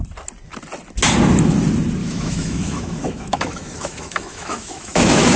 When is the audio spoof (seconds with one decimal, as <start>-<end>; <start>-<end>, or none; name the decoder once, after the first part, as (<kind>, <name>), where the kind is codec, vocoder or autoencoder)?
2.0-5.4 (autoencoder, DAC-VAE)

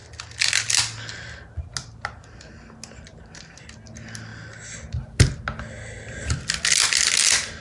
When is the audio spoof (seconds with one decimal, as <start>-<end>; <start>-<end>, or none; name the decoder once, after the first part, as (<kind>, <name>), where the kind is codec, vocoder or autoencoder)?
none